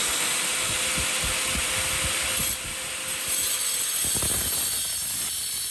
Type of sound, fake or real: real